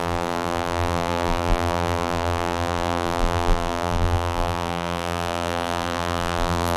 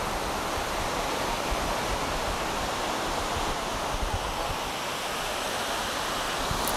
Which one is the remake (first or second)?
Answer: first